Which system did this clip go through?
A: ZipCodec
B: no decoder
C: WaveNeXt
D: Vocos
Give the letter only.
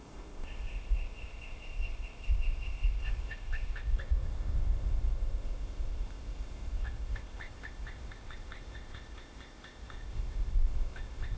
A